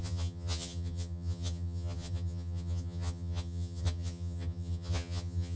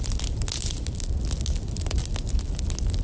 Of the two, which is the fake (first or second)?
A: first